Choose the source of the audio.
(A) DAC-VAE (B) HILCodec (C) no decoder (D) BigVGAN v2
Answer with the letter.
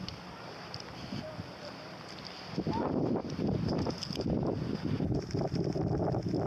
C